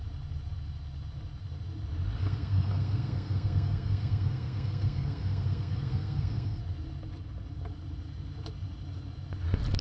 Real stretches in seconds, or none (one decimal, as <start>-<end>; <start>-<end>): 0.0-2.2; 6.6-9.8